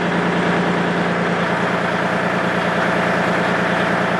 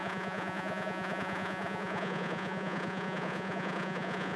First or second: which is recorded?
first